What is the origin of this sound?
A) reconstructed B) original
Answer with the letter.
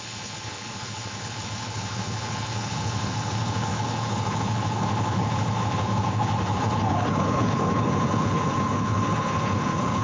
A